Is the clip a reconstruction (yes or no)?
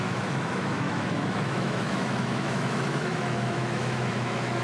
yes